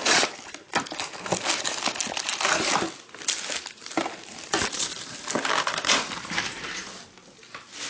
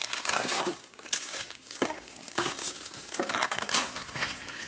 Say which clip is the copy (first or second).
second